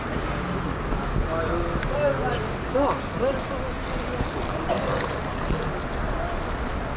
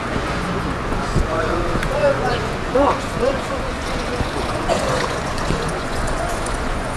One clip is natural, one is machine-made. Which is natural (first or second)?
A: first